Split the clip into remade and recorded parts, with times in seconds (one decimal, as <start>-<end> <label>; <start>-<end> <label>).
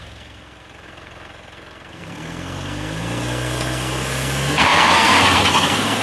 0.0-6.0 remade